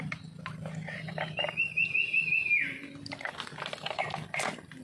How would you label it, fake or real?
real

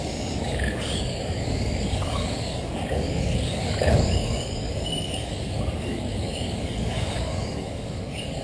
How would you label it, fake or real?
fake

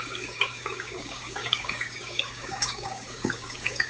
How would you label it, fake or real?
fake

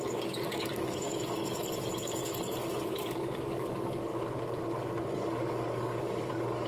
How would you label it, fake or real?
fake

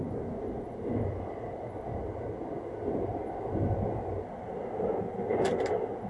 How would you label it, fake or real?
real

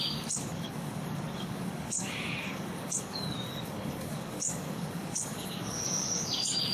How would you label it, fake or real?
fake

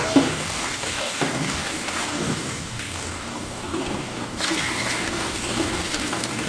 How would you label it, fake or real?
fake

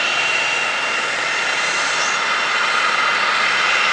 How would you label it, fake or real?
real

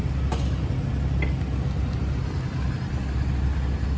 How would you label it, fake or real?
real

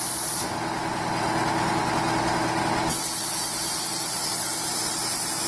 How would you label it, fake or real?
real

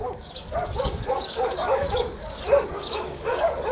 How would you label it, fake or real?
fake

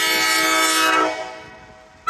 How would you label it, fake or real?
real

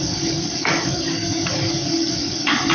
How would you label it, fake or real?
fake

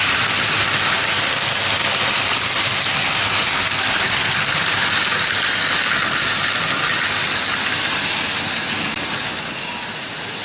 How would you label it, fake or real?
real